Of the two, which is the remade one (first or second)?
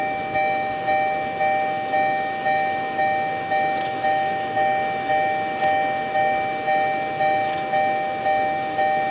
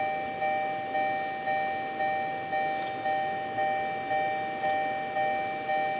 first